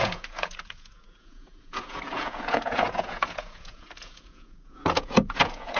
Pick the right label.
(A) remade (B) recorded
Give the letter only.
A